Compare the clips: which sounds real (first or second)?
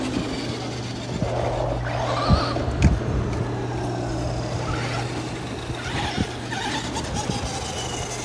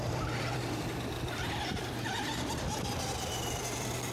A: first